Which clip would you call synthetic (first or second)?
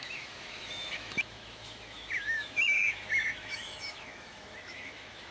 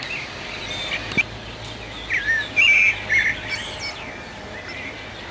first